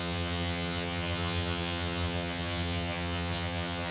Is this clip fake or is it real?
fake